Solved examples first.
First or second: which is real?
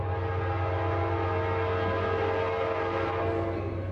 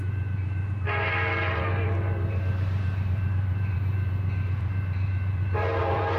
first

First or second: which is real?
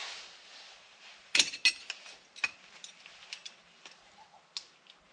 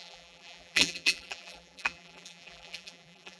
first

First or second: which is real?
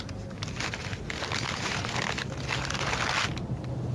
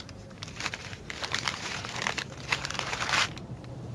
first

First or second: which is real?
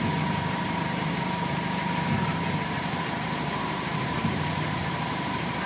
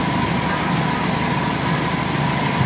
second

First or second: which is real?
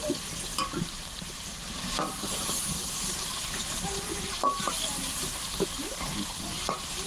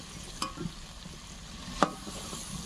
second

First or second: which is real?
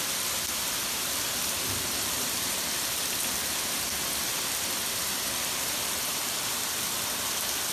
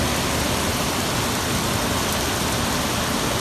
second